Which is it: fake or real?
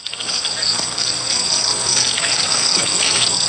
fake